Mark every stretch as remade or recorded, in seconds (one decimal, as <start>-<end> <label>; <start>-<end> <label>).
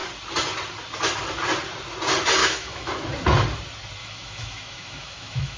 0.0-2.4 recorded; 2.4-2.9 remade; 2.9-4.0 recorded; 4.0-5.6 remade